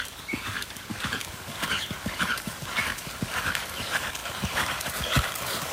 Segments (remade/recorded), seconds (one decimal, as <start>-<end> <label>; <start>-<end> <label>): 0.0-5.7 remade